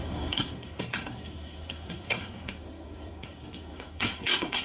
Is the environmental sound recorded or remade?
remade